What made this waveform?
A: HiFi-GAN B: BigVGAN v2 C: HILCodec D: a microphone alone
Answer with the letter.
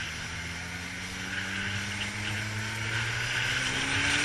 D